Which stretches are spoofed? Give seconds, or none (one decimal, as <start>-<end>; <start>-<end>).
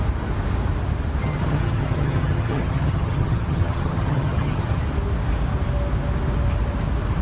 1.2-4.8